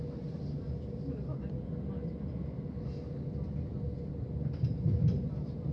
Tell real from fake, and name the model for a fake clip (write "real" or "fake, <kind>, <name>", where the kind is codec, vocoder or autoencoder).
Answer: real